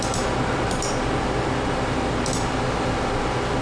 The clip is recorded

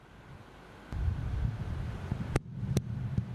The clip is recorded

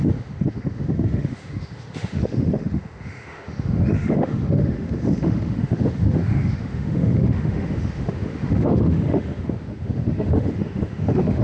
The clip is remade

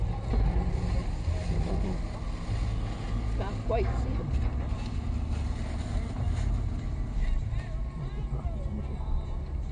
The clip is recorded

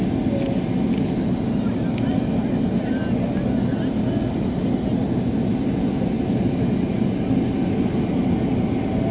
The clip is recorded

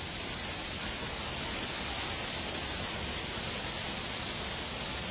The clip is recorded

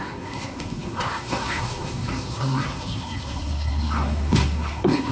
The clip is remade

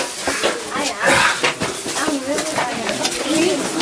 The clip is recorded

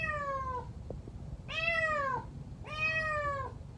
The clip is recorded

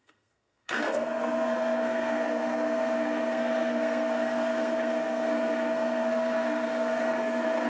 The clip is remade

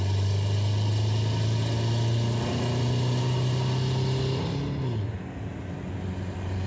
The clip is recorded